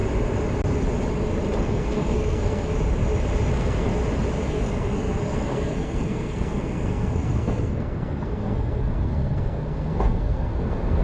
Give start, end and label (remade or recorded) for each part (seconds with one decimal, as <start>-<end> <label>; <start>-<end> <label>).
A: 0.0-1.6 recorded; 1.6-2.7 remade; 2.7-3.5 recorded; 3.5-3.9 remade; 3.9-4.5 recorded; 4.5-11.0 remade